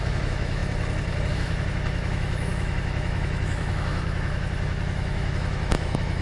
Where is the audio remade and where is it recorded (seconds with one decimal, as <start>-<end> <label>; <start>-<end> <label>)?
0.0-0.6 remade; 0.6-1.3 recorded; 1.3-6.2 remade

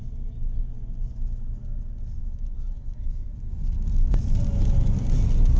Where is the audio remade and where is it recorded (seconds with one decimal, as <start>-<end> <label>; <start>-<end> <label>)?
0.0-2.2 recorded; 2.2-3.6 remade; 3.6-5.6 recorded

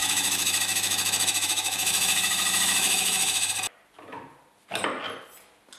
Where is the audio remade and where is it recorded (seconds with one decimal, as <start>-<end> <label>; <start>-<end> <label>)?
0.0-3.5 remade; 3.5-5.8 recorded

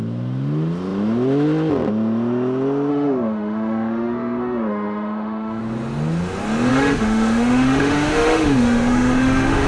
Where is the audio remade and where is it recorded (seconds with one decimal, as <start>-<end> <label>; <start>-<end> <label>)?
0.0-2.9 recorded; 2.9-5.6 remade; 5.6-6.7 recorded; 6.7-9.7 remade

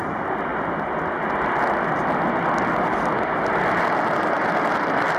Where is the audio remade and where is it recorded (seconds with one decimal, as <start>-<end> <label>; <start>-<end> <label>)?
0.0-5.2 recorded

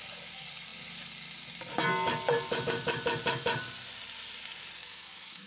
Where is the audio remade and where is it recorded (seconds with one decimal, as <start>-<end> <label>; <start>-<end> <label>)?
0.0-4.8 recorded; 4.8-5.5 remade

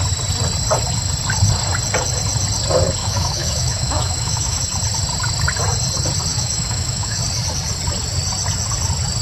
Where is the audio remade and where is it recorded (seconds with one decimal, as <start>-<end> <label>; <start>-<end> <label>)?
0.0-3.0 recorded; 3.0-4.6 remade; 4.6-6.3 recorded; 6.3-7.2 remade; 7.2-9.2 recorded

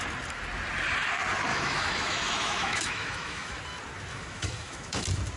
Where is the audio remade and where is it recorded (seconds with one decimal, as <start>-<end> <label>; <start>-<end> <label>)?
0.0-1.5 recorded; 1.5-3.6 remade; 3.6-4.1 recorded; 4.1-5.0 remade; 5.0-5.4 recorded